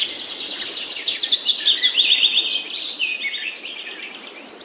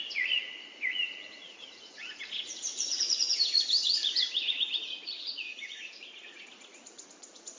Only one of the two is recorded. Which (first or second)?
first